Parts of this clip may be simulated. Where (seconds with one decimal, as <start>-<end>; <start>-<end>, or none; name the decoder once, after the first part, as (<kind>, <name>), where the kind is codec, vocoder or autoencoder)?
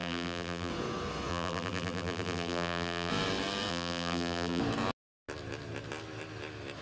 0.0-0.7 (vocoder, BigVGAN v2); 1.3-3.1; 3.7-4.6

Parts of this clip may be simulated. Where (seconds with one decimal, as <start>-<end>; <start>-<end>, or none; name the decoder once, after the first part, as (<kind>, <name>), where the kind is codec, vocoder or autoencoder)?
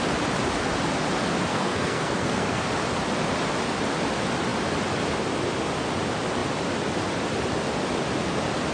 1.5-2.7 (codec, SNAC)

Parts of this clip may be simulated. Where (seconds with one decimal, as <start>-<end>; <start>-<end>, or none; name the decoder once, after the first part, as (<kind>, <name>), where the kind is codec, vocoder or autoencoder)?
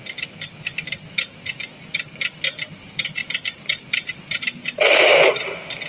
none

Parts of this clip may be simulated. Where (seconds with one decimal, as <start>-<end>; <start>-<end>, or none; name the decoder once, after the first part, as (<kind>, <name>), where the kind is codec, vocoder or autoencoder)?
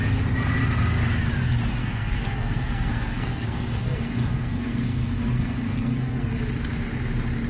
1.8-6.3 (codec, SNAC)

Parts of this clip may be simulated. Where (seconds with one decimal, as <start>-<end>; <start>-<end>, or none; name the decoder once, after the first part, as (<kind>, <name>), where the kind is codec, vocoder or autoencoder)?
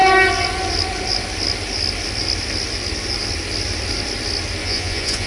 4.6-5.3 (vocoder, Vocos)